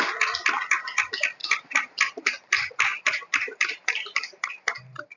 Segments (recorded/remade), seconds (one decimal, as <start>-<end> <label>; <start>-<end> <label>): 0.0-1.4 recorded; 1.4-4.5 remade; 4.5-5.2 recorded